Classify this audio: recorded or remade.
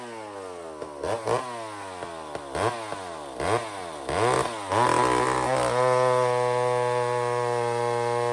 recorded